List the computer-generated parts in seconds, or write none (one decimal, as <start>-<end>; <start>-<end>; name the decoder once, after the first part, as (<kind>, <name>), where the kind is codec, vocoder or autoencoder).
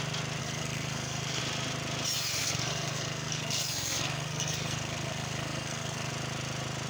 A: 0.4-1.4 (codec, SNAC); 2.4-6.1